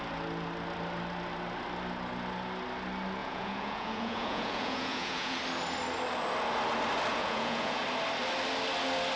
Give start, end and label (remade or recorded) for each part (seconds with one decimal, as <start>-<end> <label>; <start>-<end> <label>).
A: 0.0-3.2 recorded; 3.2-5.4 remade; 5.4-7.1 recorded; 7.1-7.8 remade; 7.8-9.2 recorded